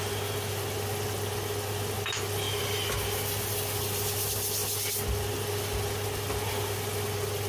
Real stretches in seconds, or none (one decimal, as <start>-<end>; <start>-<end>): 0.0-7.5